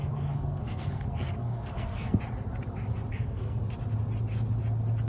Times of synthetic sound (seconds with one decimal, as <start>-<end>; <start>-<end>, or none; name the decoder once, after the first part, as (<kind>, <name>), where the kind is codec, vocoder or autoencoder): 0.0-2.2 (codec, SNAC); 3.1-3.6